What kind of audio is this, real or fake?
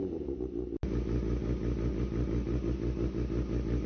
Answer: real